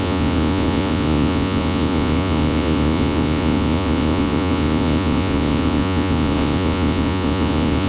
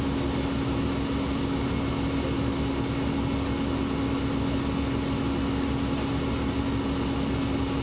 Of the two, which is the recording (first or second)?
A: second